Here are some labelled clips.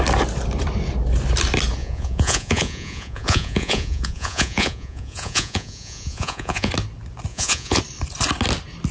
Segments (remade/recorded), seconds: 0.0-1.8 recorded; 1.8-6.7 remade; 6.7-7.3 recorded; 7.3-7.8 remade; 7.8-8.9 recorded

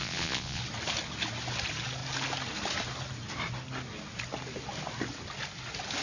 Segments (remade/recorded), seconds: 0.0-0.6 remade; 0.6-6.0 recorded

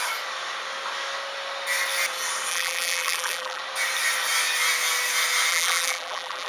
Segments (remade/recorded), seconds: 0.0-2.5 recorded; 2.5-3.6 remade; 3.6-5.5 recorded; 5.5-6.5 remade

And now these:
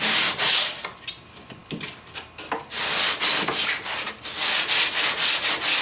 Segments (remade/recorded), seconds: 0.0-5.8 recorded

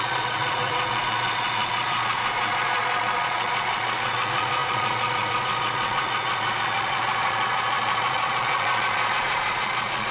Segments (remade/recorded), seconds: 0.0-10.1 remade